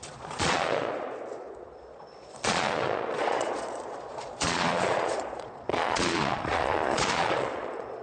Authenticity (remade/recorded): remade